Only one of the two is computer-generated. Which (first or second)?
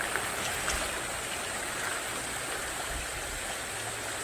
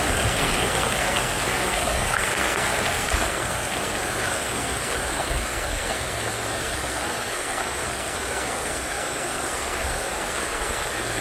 second